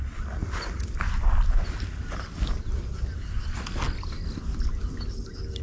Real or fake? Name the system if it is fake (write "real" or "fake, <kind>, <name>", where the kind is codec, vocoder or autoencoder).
real